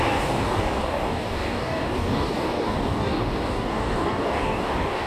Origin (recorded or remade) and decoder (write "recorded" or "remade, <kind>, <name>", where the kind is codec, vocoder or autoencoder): remade, codec, DAC